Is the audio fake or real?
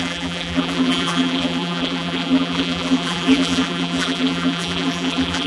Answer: fake